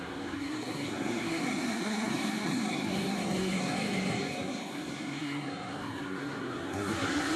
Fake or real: fake